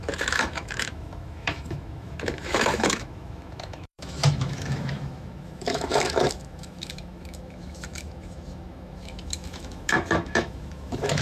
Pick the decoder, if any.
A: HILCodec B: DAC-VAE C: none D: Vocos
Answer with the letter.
B